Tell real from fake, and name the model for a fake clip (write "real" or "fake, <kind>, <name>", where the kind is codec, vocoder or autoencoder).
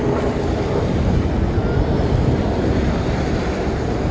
real